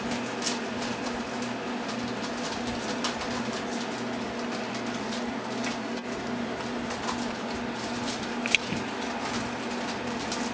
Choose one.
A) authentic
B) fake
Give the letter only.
A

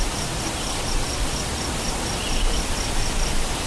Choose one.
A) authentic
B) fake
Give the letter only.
A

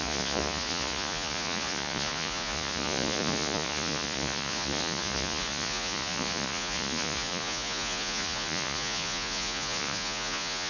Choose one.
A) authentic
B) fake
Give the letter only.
B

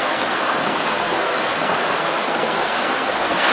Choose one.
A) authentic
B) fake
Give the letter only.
B